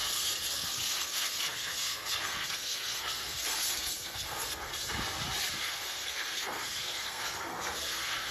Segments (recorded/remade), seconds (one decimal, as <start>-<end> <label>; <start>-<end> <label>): 0.0-4.7 remade; 4.7-5.6 recorded; 5.6-8.3 remade